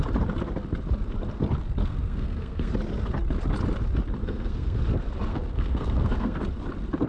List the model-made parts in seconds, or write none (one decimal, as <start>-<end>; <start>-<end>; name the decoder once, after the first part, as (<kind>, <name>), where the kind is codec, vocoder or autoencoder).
1.8-2.7 (codec, SNAC); 4.2-4.8; 5.3-6.4